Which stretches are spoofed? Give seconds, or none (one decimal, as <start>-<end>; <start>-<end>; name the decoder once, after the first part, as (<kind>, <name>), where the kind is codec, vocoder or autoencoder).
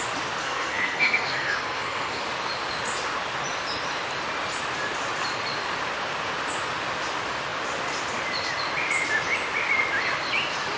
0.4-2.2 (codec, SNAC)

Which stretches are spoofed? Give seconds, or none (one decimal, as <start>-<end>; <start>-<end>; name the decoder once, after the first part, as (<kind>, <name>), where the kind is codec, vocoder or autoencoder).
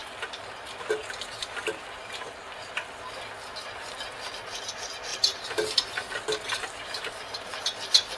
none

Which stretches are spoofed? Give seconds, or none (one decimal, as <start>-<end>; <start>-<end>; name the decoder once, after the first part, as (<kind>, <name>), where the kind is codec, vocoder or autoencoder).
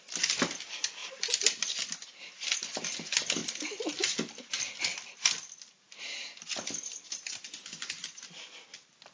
1.0-1.8 (vocoder, BigVGAN v2); 3.4-8.5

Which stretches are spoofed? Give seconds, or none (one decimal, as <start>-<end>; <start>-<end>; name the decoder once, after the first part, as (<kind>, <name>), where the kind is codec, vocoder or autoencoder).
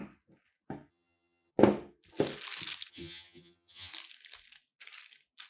0.9-1.5 (vocoder, HiFi-GAN); 2.9-3.9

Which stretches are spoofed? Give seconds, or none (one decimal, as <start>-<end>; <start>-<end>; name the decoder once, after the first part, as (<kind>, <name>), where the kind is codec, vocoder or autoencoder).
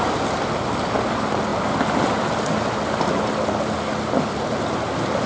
none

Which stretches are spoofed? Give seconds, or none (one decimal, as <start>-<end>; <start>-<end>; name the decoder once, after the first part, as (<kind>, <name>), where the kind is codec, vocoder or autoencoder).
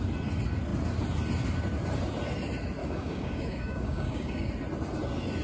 2.8-4.5 (codec, DAC)